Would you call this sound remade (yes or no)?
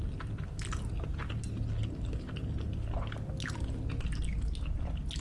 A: no